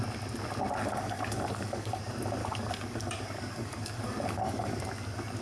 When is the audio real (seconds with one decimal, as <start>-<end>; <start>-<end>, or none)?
0.0-0.8; 2.0-2.4; 4.8-5.4